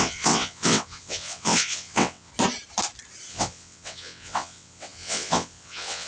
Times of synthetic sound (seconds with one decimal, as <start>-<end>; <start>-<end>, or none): 0.0-2.3; 3.3-6.1